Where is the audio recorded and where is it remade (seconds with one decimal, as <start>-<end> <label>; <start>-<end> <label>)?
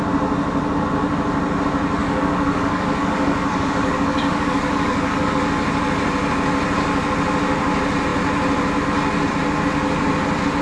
0.0-2.0 recorded; 2.0-5.4 remade; 5.4-10.6 recorded